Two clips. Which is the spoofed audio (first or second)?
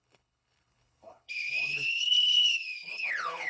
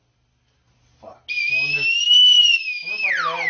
first